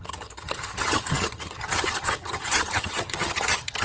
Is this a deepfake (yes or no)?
yes